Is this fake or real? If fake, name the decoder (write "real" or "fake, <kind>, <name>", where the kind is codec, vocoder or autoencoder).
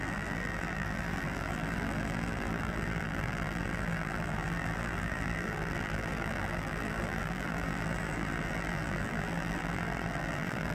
fake, vocoder, BigVGAN v2